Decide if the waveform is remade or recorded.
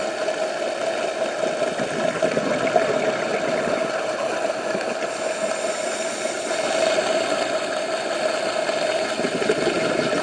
recorded